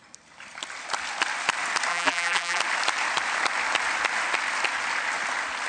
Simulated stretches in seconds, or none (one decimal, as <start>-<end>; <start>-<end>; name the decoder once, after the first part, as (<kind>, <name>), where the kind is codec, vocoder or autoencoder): 1.9-2.6 (vocoder, BigVGAN v2)